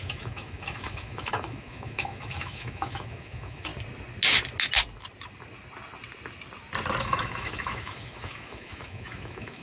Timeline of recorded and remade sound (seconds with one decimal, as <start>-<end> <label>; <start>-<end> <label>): 0.0-3.7 remade; 3.7-7.0 recorded; 7.0-9.6 remade